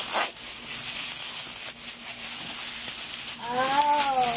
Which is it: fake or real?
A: real